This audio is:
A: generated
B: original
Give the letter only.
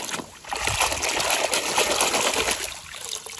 B